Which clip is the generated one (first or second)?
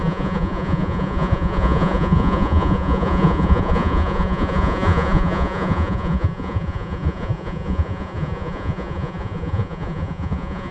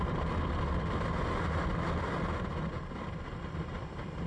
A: first